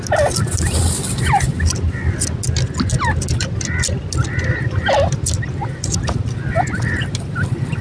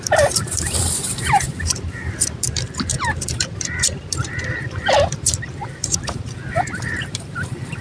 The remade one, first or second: second